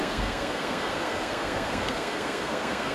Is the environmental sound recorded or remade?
remade